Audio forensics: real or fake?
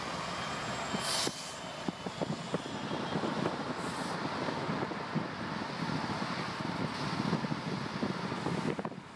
real